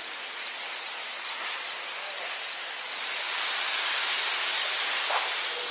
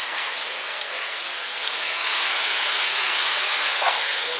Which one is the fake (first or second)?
second